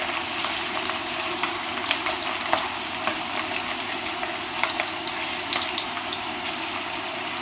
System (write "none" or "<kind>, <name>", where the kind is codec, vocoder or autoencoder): none